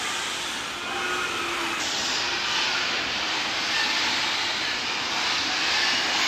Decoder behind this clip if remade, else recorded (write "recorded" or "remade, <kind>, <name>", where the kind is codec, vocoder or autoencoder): recorded